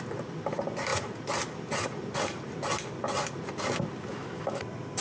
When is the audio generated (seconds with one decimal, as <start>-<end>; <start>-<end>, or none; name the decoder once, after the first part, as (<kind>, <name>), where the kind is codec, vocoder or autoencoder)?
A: 4.1-4.6 (autoencoder, DAC-VAE)